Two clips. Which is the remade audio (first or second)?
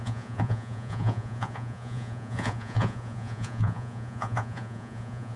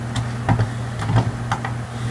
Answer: first